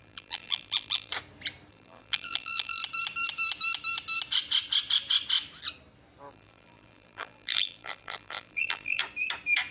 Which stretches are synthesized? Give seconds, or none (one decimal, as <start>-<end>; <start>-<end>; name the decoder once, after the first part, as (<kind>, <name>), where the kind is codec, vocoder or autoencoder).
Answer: 0.0-1.1 (vocoder, BigVGAN v2); 1.7-2.8; 6.3-9.0